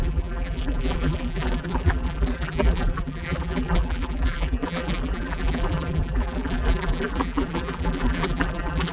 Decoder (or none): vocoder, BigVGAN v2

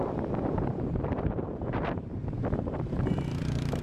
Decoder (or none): vocoder, BigVGAN v2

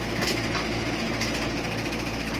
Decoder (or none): none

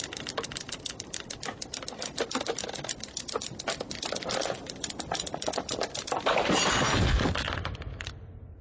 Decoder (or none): vocoder, BigVGAN v2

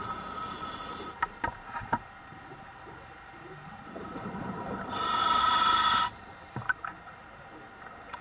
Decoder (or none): vocoder, BigVGAN v2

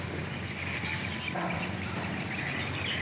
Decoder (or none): none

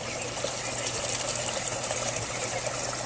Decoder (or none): none